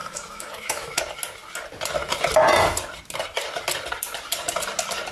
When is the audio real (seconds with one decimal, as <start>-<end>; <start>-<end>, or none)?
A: 1.0-5.1